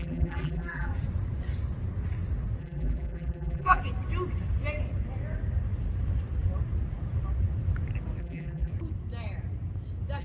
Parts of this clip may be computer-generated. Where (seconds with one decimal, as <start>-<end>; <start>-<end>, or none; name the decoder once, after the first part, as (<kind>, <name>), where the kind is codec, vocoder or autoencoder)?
0.0-0.9 (vocoder, BigVGAN v2); 2.6-3.8; 8.2-8.7